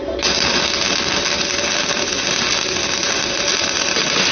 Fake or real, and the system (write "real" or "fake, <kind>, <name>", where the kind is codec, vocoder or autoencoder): real